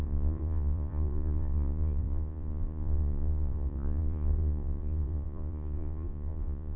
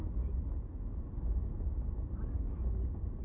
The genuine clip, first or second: second